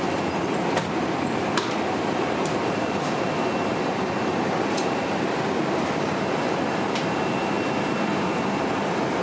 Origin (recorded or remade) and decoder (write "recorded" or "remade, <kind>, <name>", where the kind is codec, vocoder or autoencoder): remade, vocoder, BigVGAN v2